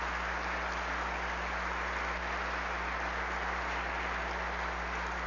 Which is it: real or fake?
real